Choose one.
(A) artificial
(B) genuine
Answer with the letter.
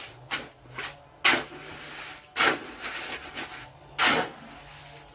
B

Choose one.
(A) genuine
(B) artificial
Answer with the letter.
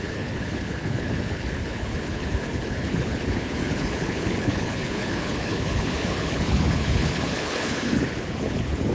B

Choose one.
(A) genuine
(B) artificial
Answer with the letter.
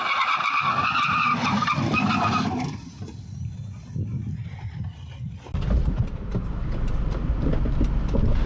A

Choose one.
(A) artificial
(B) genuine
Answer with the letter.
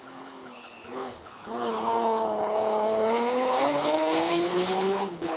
A